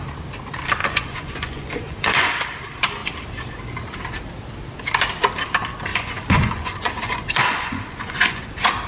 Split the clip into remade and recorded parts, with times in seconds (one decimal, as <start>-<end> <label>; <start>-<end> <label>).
0.0-0.8 recorded; 0.8-2.3 remade; 2.3-5.9 recorded; 5.9-8.4 remade; 8.4-8.9 recorded

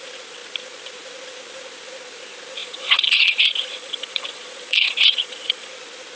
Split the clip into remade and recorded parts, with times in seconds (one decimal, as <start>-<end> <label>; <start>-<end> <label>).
0.0-2.6 recorded; 2.6-5.7 remade; 5.7-6.2 recorded